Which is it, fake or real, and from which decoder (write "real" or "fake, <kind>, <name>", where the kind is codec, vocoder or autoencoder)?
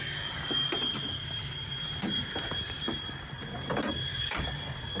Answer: real